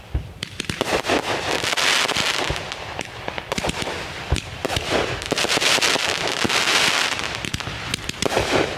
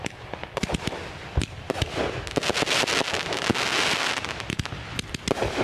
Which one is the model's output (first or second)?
first